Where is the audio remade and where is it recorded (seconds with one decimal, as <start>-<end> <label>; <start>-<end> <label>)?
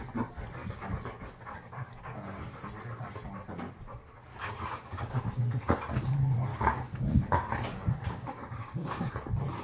0.0-4.3 recorded; 4.3-5.4 remade; 5.4-6.5 recorded; 6.5-9.1 remade; 9.1-9.6 recorded